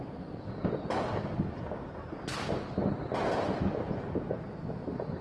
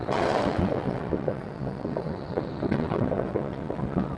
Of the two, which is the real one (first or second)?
first